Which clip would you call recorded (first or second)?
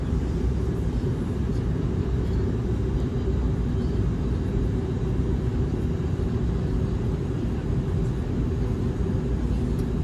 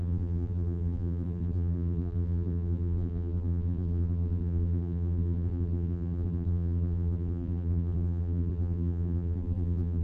first